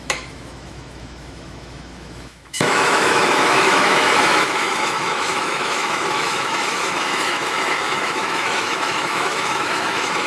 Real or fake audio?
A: fake